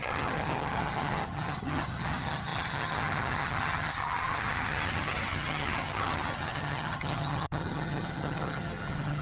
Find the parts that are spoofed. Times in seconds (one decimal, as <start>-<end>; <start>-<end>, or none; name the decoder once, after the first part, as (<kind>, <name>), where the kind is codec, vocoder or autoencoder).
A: 0.0-9.2 (vocoder, HiFi-GAN)